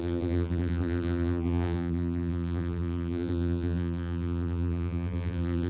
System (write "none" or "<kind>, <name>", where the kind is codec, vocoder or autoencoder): vocoder, BigVGAN v2